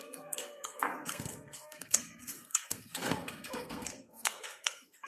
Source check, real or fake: fake